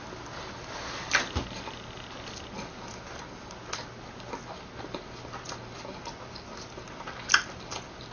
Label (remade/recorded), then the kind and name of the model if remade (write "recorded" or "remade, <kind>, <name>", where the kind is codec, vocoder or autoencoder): recorded